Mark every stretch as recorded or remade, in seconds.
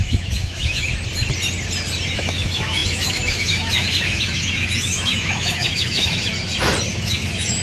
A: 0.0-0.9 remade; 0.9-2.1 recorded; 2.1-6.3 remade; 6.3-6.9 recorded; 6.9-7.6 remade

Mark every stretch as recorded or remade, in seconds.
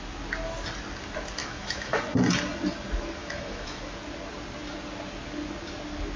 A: 0.0-1.4 recorded; 1.4-2.0 remade; 2.0-3.2 recorded; 3.2-3.8 remade; 3.8-6.2 recorded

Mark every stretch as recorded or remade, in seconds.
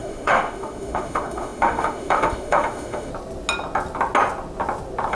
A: 0.0-3.1 remade; 3.1-5.1 recorded